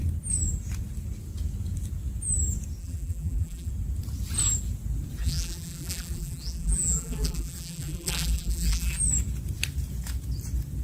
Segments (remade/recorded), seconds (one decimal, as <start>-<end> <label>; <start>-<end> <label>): 0.0-2.8 recorded; 2.8-3.7 remade; 3.7-5.2 recorded; 5.2-9.0 remade; 9.0-10.8 recorded